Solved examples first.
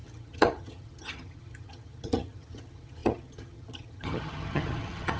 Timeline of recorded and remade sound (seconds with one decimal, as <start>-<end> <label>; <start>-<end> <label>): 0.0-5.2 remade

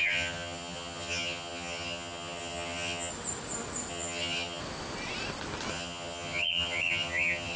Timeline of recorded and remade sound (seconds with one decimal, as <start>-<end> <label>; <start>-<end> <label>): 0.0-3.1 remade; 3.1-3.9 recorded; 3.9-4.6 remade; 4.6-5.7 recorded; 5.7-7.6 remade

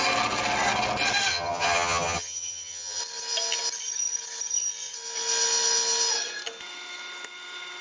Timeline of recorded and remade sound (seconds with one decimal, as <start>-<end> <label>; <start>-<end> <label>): 0.0-1.3 recorded; 1.3-3.0 remade; 3.0-7.8 recorded

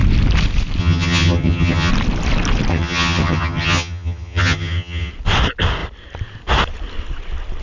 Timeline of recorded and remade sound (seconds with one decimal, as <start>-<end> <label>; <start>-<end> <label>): 0.0-0.8 recorded; 0.8-1.9 remade; 1.9-2.7 recorded; 2.7-5.1 remade; 5.1-7.6 recorded

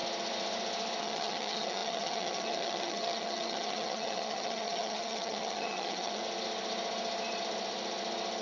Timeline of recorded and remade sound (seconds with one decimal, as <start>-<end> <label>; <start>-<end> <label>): 0.0-1.0 recorded; 1.0-6.2 remade; 6.2-8.4 recorded

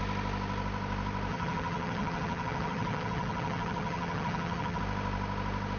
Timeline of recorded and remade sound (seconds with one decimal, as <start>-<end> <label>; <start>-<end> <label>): 0.0-1.3 recorded; 1.3-4.8 remade; 4.8-5.8 recorded